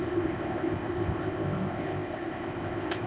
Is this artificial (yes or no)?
yes